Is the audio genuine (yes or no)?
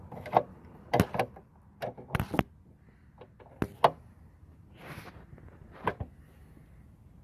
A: yes